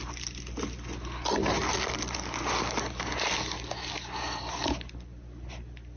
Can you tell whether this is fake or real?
real